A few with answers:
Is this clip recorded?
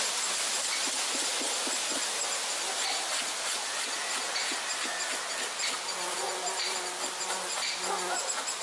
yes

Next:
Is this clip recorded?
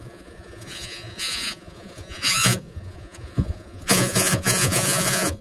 no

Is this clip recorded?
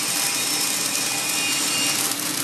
yes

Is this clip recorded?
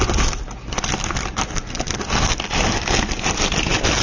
yes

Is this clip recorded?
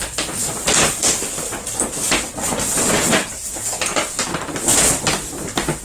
yes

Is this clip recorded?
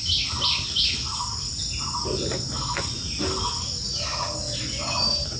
yes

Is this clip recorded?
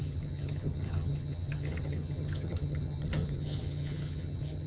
no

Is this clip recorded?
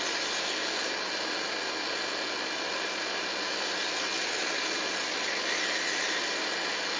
yes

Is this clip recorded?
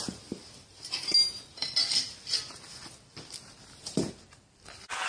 yes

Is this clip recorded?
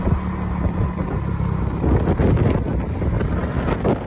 yes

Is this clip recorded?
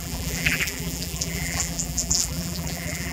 no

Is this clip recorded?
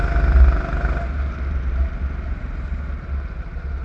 yes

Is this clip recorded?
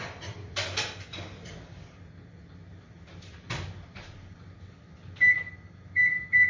yes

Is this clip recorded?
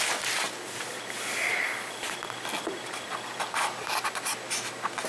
yes